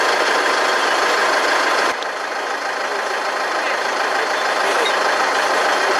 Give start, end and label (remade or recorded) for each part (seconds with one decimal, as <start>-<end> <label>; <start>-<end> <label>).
0.0-6.0 recorded